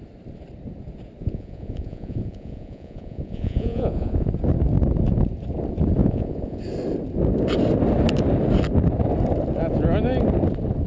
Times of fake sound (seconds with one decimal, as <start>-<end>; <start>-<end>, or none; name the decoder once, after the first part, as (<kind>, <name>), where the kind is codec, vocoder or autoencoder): 1.2-4.3 (vocoder, Vocos); 6.0-6.6